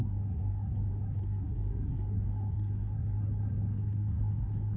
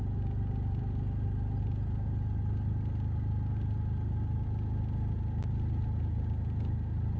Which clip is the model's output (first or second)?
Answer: first